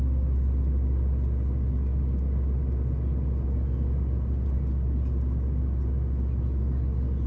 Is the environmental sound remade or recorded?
recorded